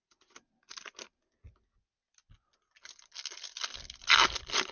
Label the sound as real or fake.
real